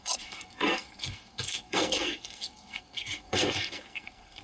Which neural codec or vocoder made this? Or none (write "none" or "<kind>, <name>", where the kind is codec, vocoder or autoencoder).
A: codec, SNAC